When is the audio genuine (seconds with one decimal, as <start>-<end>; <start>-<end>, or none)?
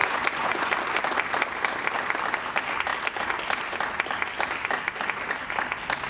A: 0.7-6.1